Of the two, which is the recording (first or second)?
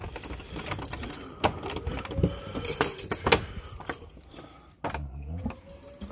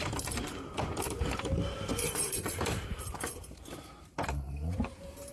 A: first